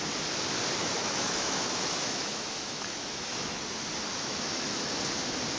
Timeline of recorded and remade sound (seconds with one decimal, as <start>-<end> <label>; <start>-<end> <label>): 0.0-0.8 recorded; 0.8-3.6 remade; 3.6-4.1 recorded; 4.1-4.9 remade; 4.9-5.6 recorded